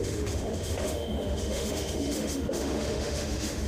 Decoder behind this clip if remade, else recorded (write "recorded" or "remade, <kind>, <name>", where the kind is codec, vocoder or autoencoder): remade, autoencoder, DAC-VAE